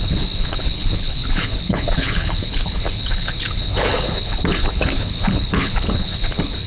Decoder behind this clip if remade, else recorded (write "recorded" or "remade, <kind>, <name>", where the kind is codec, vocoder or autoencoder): remade, codec, HILCodec